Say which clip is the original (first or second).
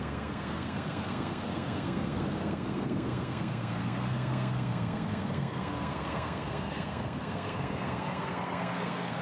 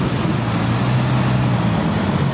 second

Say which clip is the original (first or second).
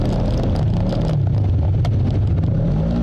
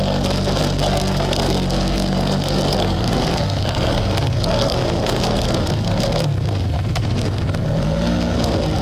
first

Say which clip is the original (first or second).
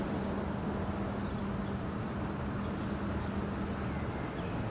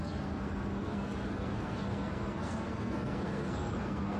first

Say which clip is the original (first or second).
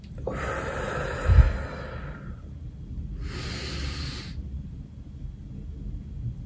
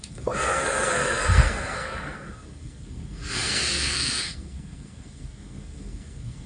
first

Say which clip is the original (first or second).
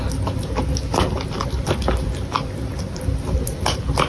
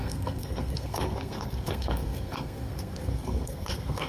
first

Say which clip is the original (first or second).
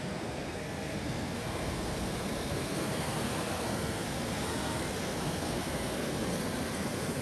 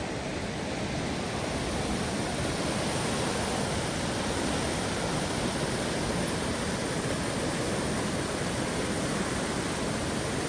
second